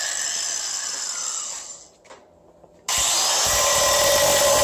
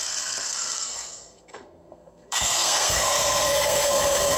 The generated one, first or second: second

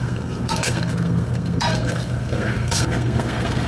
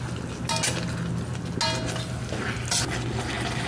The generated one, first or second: first